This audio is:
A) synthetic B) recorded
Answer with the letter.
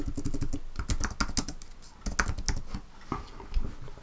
B